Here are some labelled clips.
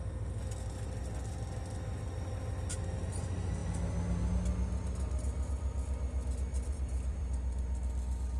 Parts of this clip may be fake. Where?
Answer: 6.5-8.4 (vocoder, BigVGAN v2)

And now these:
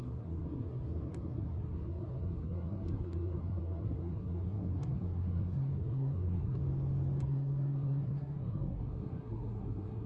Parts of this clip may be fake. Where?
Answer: 0.0-6.6 (codec, SNAC); 7.2-10.1

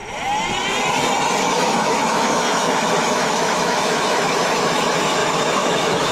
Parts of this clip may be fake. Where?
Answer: 1.4-6.1 (autoencoder, DAC-VAE)

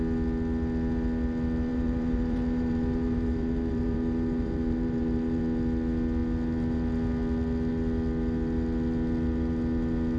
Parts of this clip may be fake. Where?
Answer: 1.7-5.4 (vocoder, BigVGAN v2)

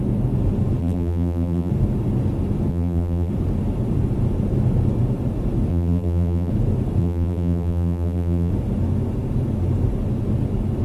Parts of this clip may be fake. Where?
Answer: 0.8-1.7 (vocoder, BigVGAN v2); 2.7-3.3; 5.7-6.5; 7.0-8.5